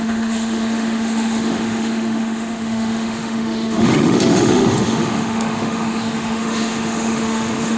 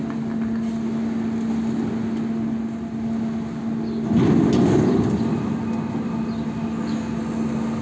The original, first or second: second